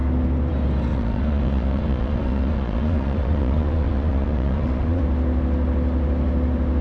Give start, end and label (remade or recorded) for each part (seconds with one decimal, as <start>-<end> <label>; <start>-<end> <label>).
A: 0.0-0.9 recorded; 0.9-5.0 remade; 5.0-6.8 recorded